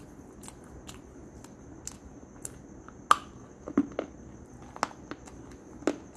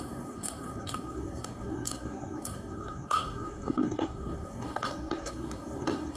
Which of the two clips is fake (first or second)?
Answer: second